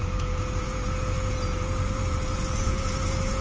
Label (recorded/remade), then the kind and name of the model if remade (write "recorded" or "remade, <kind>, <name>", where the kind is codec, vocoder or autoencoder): remade, vocoder, Vocos